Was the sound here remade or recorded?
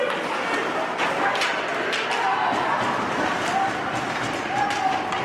recorded